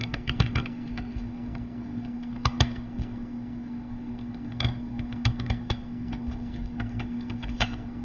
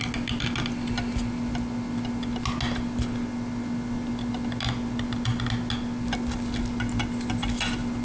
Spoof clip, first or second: first